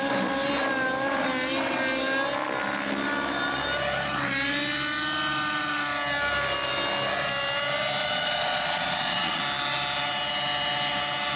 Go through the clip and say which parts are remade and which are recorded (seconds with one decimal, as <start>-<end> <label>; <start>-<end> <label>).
0.0-8.0 recorded; 8.0-9.4 remade; 9.4-11.4 recorded

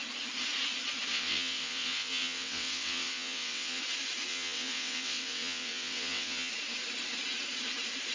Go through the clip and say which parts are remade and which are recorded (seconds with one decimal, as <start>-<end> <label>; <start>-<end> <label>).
0.0-1.1 recorded; 1.1-3.8 remade; 3.8-4.3 recorded; 4.3-6.5 remade; 6.5-8.1 recorded

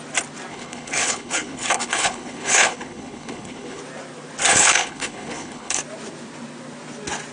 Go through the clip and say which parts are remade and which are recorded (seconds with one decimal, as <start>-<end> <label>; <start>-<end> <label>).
0.0-0.5 recorded; 0.5-3.8 remade; 3.8-4.5 recorded; 4.5-5.8 remade; 5.8-7.3 recorded

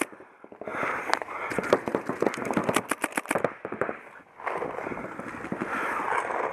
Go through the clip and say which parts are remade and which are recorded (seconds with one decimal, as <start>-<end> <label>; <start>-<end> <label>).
0.0-6.5 recorded

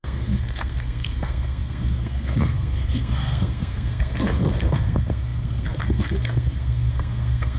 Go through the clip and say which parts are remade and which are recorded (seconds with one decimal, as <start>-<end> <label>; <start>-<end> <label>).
0.0-7.6 remade

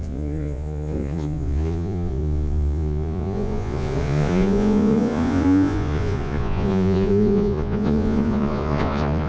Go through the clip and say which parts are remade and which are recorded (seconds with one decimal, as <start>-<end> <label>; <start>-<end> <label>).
0.0-9.3 remade

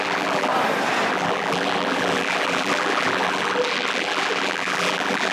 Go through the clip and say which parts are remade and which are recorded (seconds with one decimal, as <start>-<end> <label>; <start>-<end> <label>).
0.0-0.5 remade; 0.5-1.1 recorded; 1.1-5.3 remade

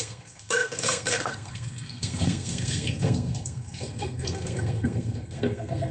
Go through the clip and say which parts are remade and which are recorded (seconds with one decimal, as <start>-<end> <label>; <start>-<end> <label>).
0.0-5.9 remade